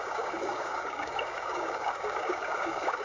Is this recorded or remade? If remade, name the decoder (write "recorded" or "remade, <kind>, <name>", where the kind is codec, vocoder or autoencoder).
remade, codec, DAC